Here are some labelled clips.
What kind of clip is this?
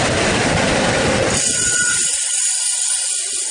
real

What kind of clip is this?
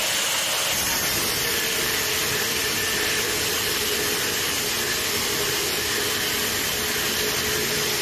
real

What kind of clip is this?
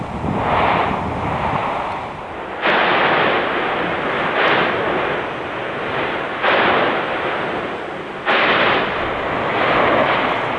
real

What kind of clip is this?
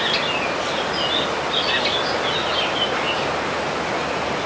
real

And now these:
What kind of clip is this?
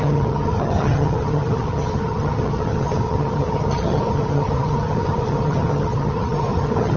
fake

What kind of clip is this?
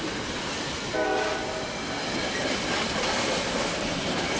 real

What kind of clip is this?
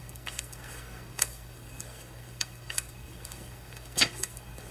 fake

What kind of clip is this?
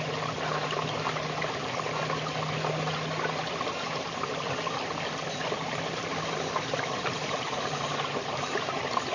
real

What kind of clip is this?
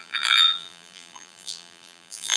fake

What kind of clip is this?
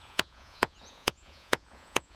fake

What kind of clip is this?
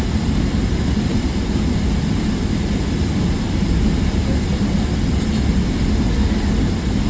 real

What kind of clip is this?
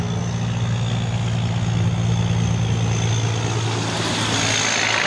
real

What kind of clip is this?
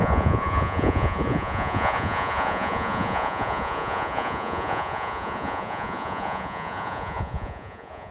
fake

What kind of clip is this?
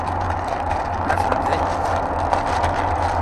real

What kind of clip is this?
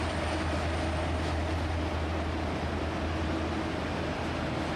real